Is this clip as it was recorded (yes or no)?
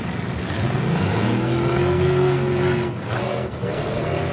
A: no